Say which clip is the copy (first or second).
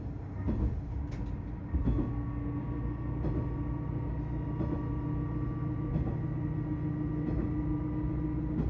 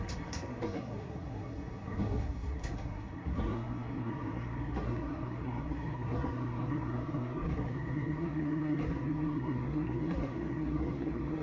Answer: second